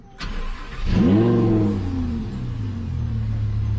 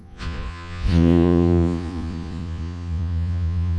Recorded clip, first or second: first